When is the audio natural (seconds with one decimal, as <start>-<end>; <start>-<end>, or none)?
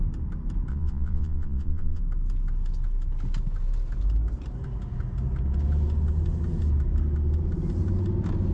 0.0-0.7; 2.0-8.5